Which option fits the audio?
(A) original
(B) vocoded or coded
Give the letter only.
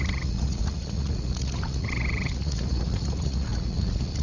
B